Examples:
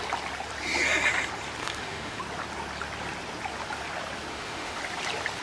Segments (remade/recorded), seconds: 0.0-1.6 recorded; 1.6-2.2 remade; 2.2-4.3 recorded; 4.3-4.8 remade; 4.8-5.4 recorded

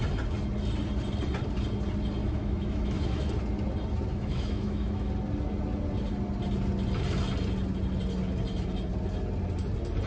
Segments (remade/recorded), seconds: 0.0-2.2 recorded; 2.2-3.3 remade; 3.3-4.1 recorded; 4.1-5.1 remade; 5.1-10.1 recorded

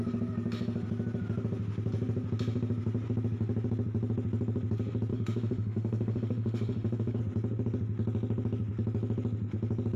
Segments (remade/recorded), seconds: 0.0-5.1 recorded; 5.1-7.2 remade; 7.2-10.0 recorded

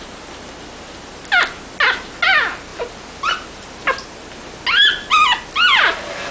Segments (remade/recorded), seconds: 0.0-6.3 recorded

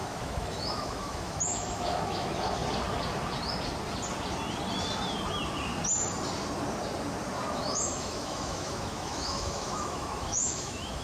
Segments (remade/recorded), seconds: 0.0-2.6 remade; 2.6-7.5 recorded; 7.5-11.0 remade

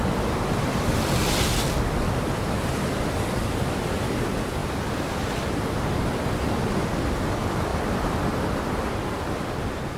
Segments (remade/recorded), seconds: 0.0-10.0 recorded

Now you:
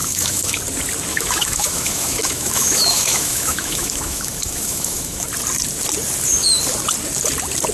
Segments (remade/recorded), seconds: 0.0-0.6 remade; 0.6-1.1 recorded; 1.1-5.3 remade; 5.3-7.7 recorded